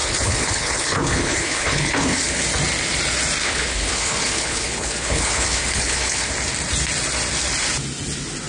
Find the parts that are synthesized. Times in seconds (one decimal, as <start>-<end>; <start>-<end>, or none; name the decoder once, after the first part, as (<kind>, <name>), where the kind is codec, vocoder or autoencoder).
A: 0.0-2.4 (codec, HILCodec); 3.4-6.3